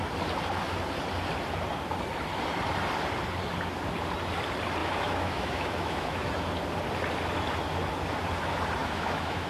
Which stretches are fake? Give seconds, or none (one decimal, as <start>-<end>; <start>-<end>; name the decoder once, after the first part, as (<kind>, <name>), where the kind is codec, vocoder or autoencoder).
4.8-6.3 (autoencoder, DAC-VAE); 8.8-9.5